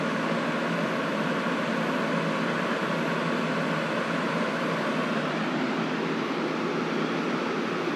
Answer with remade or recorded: recorded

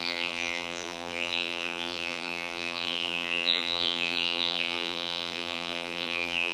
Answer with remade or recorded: remade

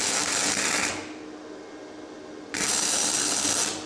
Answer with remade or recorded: recorded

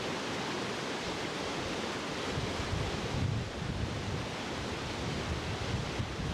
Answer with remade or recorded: recorded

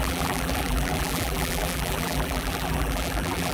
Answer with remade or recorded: remade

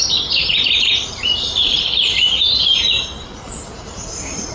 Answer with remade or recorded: remade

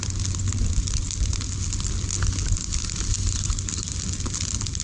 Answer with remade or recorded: recorded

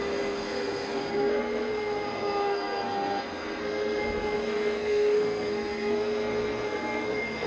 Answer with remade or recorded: remade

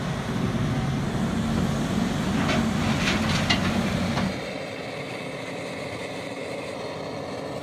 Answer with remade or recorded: recorded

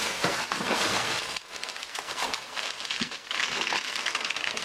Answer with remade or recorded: remade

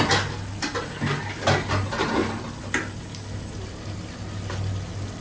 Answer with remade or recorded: recorded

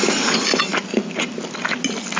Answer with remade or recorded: recorded